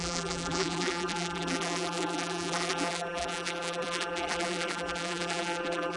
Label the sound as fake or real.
fake